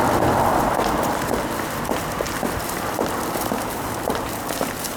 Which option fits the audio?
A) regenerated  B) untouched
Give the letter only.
A